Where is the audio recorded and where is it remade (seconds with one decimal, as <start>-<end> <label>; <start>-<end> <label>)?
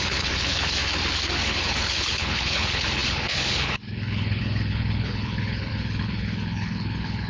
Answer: 0.0-0.8 remade; 0.8-1.4 recorded; 1.4-7.3 remade